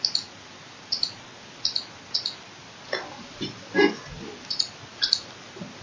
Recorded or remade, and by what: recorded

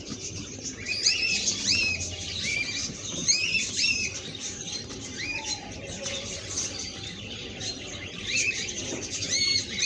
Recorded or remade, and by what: remade, vocoder, BigVGAN v2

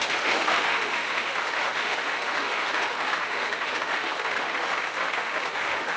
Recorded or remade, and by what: remade, autoencoder, DAC-VAE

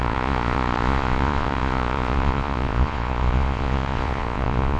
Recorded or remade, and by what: remade, vocoder, Vocos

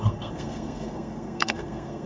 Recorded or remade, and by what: remade, codec, SNAC